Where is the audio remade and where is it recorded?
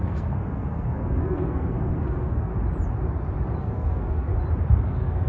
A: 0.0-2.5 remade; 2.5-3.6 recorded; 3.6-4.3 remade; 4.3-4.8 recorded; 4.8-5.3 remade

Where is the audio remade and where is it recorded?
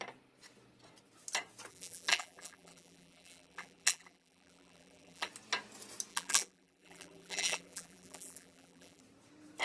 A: 0.0-1.7 recorded; 1.7-5.3 remade; 5.3-6.1 recorded; 6.1-9.0 remade; 9.0-9.6 recorded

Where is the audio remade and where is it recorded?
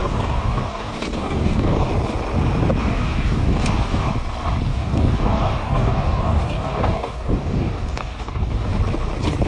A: 0.0-1.9 remade; 1.9-2.8 recorded; 2.8-4.1 remade; 4.1-4.7 recorded; 4.7-8.7 remade; 8.7-9.5 recorded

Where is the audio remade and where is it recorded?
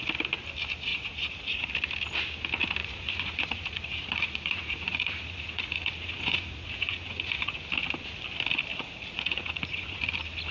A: 0.0-0.9 recorded; 0.9-1.7 remade; 1.7-2.8 recorded; 2.8-7.6 remade; 7.6-8.7 recorded; 8.7-10.1 remade; 10.1-10.5 recorded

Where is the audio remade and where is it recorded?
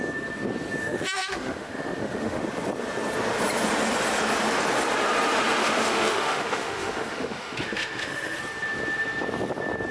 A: 0.0-0.8 recorded; 0.8-2.4 remade; 2.4-5.6 recorded; 5.6-8.4 remade; 8.4-9.9 recorded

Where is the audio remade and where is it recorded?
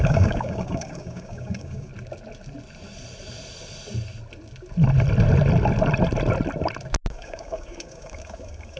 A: 0.0-1.9 remade; 1.9-7.1 recorded; 7.1-8.8 remade